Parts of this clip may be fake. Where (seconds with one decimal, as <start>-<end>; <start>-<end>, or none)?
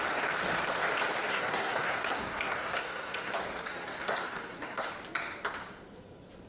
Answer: 1.3-3.3; 3.7-4.9